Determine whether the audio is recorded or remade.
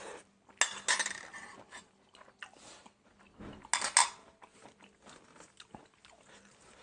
recorded